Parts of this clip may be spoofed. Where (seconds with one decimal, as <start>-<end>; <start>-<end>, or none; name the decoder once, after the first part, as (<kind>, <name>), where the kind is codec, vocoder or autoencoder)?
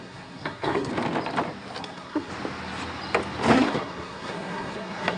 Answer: 0.0-0.9 (codec, SNAC); 1.8-2.3; 3.5-5.2